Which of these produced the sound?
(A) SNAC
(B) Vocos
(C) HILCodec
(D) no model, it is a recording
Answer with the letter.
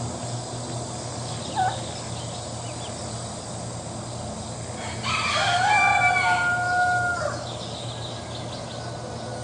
D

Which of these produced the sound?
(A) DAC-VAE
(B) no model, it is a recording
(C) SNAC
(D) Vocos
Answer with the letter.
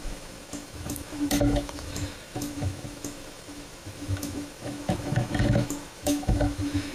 A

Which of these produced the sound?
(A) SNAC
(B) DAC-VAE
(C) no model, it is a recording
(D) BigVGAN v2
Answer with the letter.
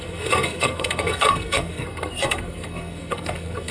A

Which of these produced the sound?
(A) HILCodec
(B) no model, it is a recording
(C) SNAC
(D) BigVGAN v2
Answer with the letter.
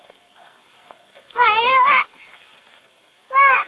C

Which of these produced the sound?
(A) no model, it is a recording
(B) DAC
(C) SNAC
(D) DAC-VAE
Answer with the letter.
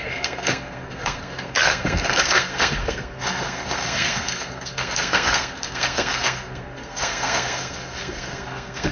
C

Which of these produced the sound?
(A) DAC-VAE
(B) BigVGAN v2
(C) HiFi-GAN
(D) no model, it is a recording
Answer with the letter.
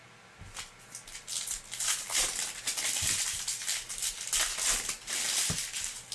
D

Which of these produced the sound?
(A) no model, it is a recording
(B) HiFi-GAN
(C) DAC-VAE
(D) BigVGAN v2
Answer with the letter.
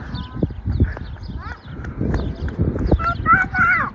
A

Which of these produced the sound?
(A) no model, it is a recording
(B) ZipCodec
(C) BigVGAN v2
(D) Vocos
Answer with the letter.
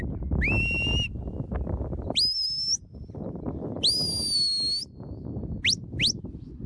A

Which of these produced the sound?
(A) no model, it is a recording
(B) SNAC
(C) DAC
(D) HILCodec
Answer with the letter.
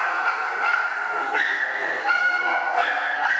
B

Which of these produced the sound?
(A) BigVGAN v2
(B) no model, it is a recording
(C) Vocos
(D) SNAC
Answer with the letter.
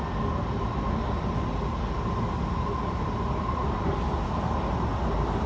B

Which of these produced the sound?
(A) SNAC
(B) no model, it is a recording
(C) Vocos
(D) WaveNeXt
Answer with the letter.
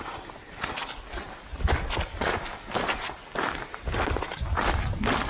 B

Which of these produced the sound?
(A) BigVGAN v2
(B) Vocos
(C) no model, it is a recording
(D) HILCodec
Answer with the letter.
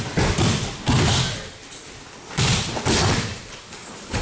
C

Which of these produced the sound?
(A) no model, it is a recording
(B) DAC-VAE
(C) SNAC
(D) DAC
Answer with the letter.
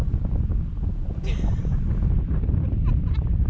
A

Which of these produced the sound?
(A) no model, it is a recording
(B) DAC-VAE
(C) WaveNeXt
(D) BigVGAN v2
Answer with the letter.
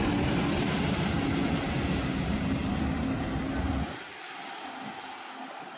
A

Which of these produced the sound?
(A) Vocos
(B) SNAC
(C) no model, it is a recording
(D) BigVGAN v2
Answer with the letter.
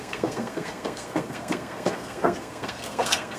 B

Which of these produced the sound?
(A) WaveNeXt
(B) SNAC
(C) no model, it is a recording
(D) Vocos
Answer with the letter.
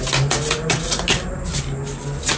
C